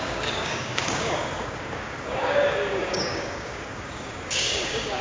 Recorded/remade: remade